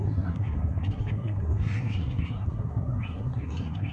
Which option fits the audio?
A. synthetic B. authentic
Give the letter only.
A